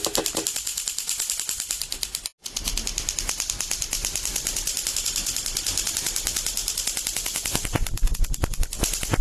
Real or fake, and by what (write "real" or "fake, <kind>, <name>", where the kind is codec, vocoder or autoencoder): real